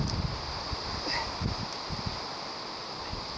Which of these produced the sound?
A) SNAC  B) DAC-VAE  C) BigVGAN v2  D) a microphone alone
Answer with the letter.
D